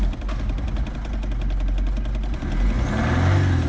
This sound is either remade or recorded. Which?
recorded